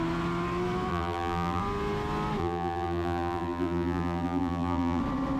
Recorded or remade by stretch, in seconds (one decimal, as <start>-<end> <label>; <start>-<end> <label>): 0.0-0.9 recorded; 0.9-1.6 remade; 1.6-2.4 recorded; 2.4-5.0 remade; 5.0-5.4 recorded